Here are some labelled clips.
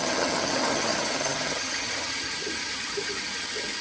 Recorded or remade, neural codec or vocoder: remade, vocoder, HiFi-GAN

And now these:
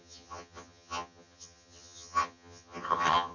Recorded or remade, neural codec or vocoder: remade, vocoder, HiFi-GAN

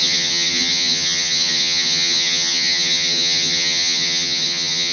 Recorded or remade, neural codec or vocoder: remade, vocoder, HiFi-GAN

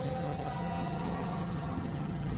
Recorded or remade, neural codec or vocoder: remade, vocoder, HiFi-GAN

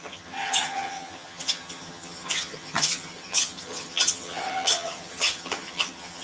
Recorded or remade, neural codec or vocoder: remade, vocoder, HiFi-GAN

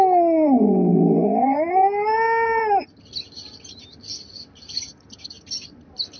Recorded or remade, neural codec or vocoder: recorded